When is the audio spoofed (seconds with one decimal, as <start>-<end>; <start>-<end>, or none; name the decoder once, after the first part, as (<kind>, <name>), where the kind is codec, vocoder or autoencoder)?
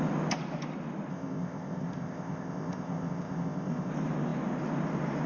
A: 1.1-3.9 (codec, ZipCodec)